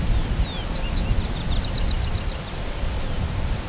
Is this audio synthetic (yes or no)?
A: no